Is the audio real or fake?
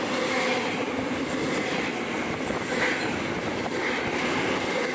real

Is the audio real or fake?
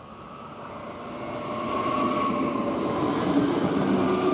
real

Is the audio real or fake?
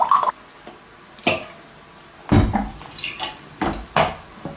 real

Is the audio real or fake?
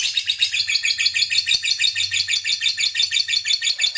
real